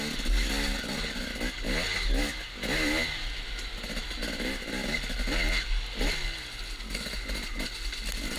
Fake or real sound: real